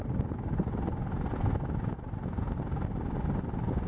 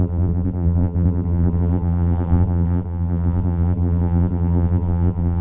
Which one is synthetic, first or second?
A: second